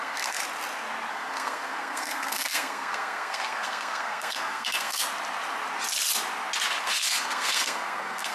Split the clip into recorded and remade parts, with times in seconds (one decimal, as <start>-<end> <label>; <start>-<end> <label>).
0.0-0.4 remade; 0.4-1.1 recorded; 1.1-5.0 remade; 5.0-6.8 recorded; 6.8-8.3 remade